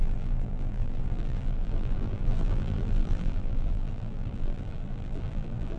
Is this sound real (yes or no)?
no